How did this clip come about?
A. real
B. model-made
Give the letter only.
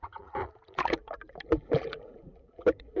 B